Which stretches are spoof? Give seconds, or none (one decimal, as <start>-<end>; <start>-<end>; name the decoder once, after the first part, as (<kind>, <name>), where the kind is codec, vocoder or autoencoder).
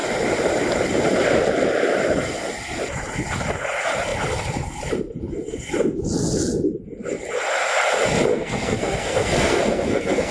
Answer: 8.3-10.3 (codec, SNAC)